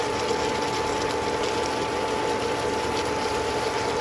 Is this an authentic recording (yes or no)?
yes